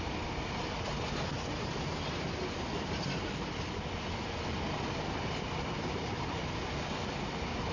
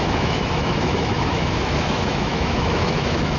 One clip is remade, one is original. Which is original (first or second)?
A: first